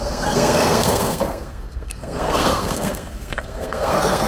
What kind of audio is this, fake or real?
fake